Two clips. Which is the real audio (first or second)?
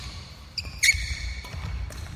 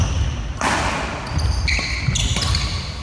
second